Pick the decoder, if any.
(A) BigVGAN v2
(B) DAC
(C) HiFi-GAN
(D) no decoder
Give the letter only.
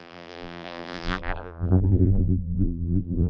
A